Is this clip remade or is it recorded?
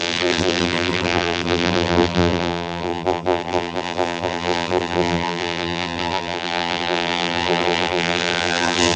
remade